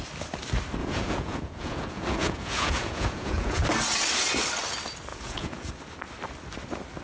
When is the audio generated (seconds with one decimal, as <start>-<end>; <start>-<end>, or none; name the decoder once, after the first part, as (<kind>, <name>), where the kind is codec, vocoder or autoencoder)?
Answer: 0.8-3.6 (vocoder, Vocos); 5.1-5.7